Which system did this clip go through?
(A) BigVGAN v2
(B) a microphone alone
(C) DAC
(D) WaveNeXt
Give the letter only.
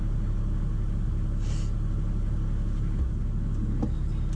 B